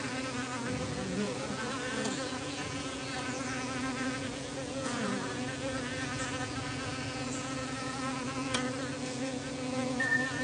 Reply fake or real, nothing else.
fake